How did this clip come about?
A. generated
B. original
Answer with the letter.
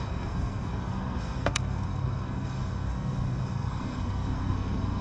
A